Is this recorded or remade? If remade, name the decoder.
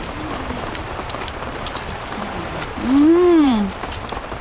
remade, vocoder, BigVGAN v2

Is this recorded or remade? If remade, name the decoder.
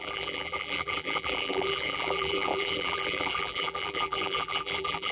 remade, vocoder, BigVGAN v2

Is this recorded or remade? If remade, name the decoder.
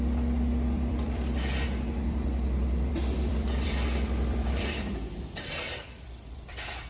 remade, vocoder, BigVGAN v2